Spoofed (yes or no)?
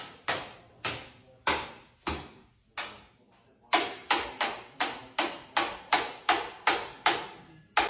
no